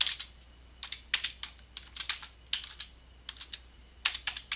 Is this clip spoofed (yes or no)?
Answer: no